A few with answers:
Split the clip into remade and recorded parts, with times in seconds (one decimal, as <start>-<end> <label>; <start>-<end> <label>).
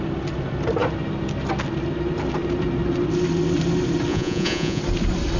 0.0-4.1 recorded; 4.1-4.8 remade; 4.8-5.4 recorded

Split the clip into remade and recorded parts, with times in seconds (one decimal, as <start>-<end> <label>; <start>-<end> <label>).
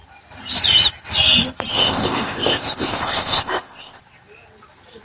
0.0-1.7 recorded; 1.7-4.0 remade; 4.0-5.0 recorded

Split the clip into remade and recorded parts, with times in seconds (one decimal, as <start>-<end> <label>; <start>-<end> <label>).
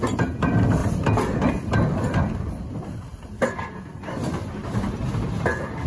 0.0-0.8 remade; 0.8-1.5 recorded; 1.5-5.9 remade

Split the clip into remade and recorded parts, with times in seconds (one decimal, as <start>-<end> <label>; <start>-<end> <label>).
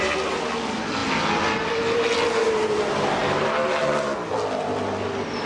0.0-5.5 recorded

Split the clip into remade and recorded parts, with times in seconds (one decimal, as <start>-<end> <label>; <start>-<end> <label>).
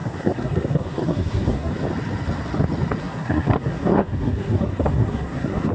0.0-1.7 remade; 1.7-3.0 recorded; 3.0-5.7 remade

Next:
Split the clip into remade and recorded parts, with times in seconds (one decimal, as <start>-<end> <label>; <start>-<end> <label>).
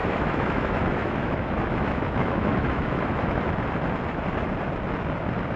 0.0-3.4 remade; 3.4-5.6 recorded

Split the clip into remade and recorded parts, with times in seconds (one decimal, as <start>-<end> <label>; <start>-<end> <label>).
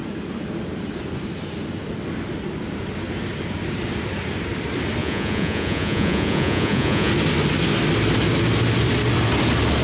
0.0-5.0 recorded; 5.0-7.1 remade; 7.1-9.8 recorded